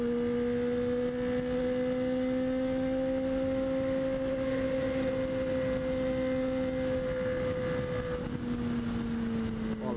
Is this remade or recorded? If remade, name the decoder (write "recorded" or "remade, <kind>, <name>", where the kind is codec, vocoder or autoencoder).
recorded